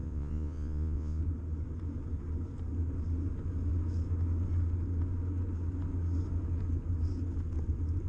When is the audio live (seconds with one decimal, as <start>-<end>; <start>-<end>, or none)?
1.2-8.1